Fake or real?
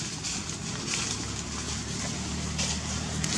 real